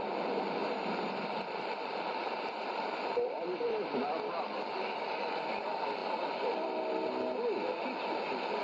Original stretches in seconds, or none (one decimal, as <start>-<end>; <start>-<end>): 0.0-0.6; 4.4-6.0; 6.9-8.6